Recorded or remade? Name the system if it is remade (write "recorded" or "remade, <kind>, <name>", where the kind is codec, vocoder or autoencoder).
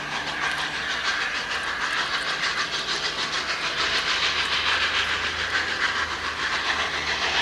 recorded